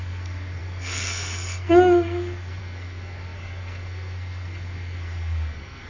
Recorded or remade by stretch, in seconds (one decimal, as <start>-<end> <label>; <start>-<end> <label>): 0.0-5.9 remade

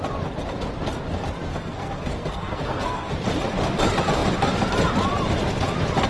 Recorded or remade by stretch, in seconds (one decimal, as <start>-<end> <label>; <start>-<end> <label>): 0.0-1.5 recorded; 1.5-3.1 remade; 3.1-6.1 recorded

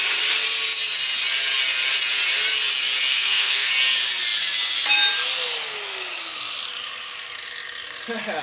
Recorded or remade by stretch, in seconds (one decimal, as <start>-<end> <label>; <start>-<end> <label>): 0.0-3.1 recorded; 3.1-3.7 remade; 3.7-8.4 recorded

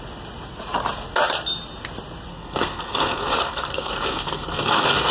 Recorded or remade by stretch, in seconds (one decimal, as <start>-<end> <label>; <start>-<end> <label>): 0.0-2.3 recorded; 2.3-5.1 remade

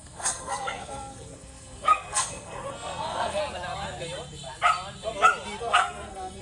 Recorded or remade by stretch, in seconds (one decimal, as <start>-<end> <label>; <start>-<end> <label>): 0.0-3.4 remade; 3.4-5.6 recorded; 5.6-6.4 remade

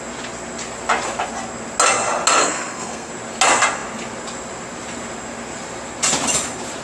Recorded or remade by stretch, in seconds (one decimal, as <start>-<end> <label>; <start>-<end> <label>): 0.0-2.4 recorded; 2.4-3.1 remade; 3.1-6.8 recorded